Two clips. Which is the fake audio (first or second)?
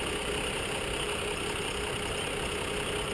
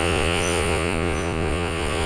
second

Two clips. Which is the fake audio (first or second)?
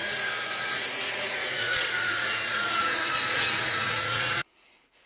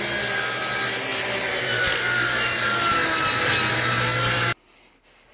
first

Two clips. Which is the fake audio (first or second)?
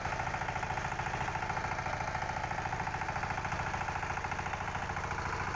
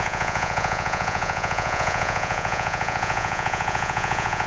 second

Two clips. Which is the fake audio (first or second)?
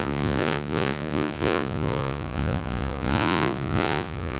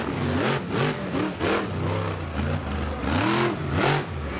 first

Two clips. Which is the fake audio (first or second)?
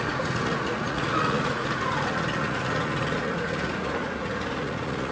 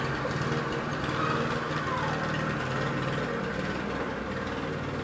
first